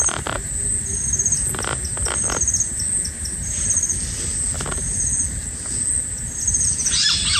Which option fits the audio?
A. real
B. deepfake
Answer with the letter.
A